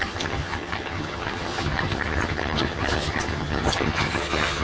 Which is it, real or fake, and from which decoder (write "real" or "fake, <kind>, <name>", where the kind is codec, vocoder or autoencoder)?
fake, vocoder, HiFi-GAN